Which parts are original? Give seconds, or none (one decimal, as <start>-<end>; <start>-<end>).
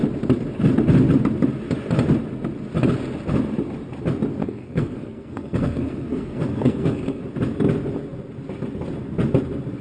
0.0-4.4; 7.2-9.8